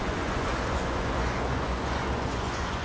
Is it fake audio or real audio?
fake